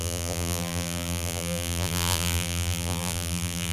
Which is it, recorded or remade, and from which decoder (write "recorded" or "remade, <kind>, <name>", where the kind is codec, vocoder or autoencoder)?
remade, vocoder, BigVGAN v2